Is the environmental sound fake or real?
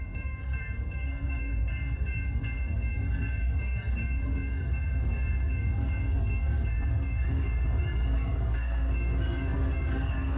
fake